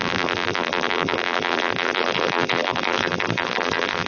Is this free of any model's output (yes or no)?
no